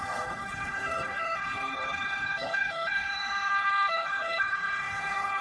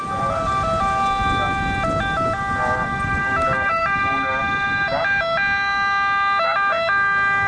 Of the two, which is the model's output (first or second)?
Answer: first